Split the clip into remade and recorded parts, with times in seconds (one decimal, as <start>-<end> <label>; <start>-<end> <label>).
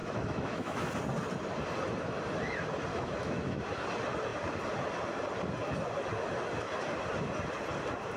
0.0-0.9 remade; 0.9-2.9 recorded; 2.9-3.6 remade; 3.6-8.2 recorded